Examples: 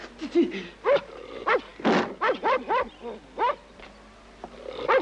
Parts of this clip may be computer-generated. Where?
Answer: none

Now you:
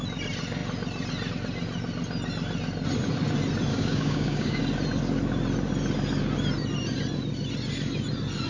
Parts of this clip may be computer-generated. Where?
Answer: 3.7-4.6 (codec, DAC)